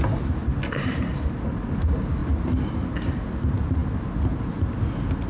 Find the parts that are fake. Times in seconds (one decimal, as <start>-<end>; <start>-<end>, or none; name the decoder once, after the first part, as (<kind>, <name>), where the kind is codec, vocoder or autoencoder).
none